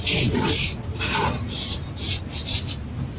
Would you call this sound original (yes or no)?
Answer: yes